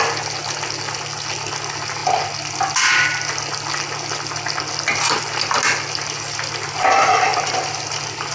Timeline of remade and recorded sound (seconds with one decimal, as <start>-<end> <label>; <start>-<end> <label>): 0.0-8.3 recorded

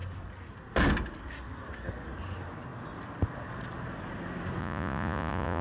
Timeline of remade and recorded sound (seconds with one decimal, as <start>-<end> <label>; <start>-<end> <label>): 0.0-4.6 recorded; 4.6-5.6 remade

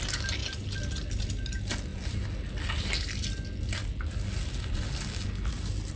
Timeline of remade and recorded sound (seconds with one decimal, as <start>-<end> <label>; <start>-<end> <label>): 0.0-6.0 recorded

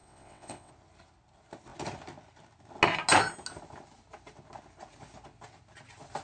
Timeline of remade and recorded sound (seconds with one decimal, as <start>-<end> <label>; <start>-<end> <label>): 0.0-0.7 remade; 0.7-6.2 recorded